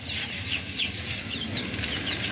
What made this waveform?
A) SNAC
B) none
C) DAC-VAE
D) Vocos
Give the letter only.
B